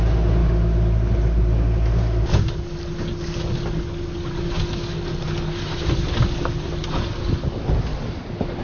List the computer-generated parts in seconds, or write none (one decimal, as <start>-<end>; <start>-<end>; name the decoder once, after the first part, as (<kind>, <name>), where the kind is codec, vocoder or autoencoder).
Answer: none